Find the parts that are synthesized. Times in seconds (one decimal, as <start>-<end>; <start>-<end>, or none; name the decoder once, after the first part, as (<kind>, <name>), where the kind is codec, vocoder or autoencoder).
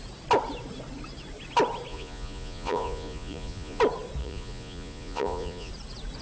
1.9-3.8 (vocoder, Vocos); 4.2-5.7